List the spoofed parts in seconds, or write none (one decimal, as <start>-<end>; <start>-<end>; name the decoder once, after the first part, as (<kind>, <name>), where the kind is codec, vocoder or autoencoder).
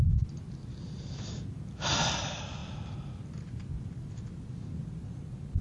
none